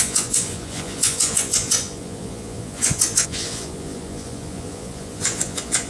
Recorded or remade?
remade